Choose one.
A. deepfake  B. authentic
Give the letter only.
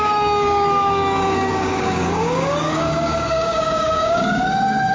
A